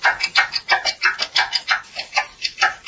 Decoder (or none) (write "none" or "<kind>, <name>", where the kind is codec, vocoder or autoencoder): none